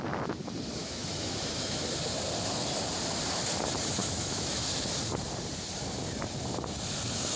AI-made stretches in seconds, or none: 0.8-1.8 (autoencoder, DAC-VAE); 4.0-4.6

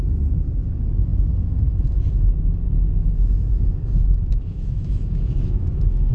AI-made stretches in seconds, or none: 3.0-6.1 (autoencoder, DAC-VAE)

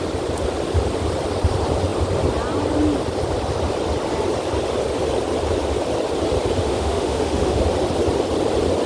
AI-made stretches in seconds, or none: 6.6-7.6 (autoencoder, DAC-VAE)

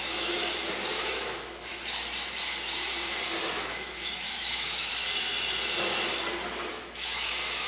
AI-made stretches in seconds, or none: 0.0-0.4 (autoencoder, DAC-VAE); 1.0-1.7; 3.4-4.9; 6.7-7.7

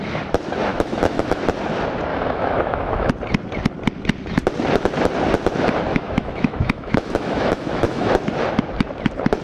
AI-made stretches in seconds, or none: 0.7-1.4 (autoencoder, DAC-VAE); 2.1-3.1; 5.9-8.1